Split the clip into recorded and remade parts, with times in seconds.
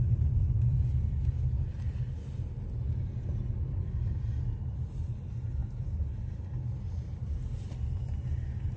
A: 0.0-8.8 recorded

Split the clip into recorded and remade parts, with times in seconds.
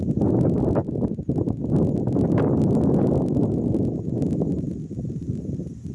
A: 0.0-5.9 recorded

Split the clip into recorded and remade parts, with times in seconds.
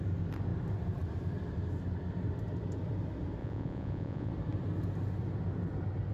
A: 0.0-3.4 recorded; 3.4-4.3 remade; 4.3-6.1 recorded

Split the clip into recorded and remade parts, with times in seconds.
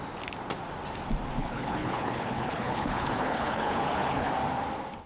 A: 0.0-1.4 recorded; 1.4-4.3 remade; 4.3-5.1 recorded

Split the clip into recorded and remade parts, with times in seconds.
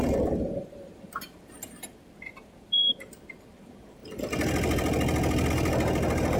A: 0.0-4.0 remade; 4.0-5.5 recorded; 5.5-6.4 remade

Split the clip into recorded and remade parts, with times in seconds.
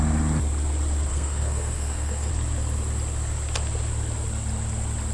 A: 0.0-1.1 recorded; 1.1-2.3 remade; 2.3-5.1 recorded